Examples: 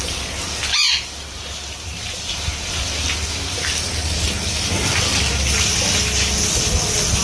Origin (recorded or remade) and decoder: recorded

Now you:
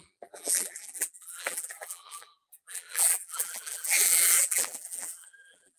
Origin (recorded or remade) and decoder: remade, vocoder, BigVGAN v2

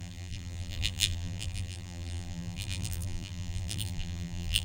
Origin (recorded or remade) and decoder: remade, vocoder, BigVGAN v2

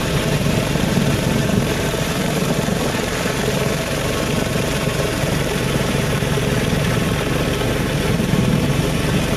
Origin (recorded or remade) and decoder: remade, vocoder, BigVGAN v2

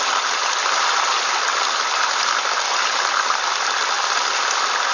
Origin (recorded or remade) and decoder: recorded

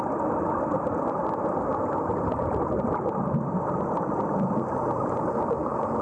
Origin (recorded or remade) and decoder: remade, vocoder, BigVGAN v2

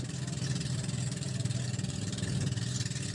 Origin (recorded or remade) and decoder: remade, vocoder, BigVGAN v2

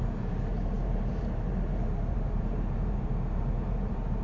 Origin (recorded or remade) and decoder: remade, vocoder, BigVGAN v2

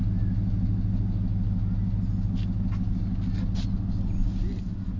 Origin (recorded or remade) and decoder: recorded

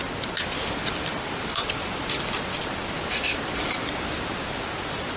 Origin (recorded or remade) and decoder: remade, vocoder, BigVGAN v2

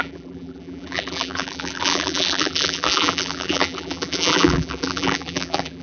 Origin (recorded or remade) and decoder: remade, vocoder, BigVGAN v2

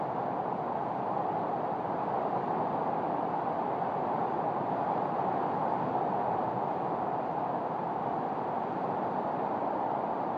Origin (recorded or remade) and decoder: recorded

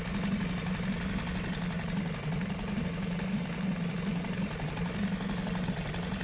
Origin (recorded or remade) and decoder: recorded